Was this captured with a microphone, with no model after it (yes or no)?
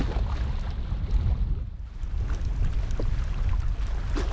yes